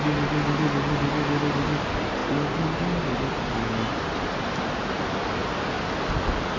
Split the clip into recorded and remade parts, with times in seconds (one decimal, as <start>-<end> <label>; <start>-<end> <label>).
0.0-6.6 recorded